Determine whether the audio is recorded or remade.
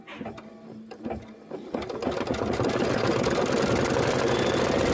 recorded